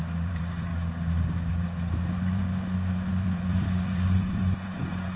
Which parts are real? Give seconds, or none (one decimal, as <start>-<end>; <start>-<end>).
0.7-1.5; 2.4-3.1